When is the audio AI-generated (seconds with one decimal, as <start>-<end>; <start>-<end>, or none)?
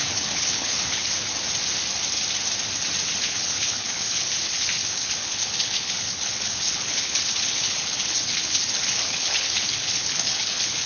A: 0.0-1.3; 3.2-10.9